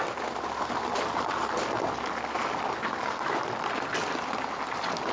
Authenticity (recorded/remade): recorded